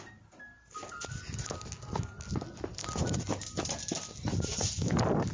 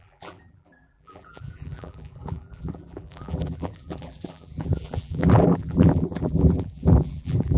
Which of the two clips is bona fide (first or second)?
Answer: first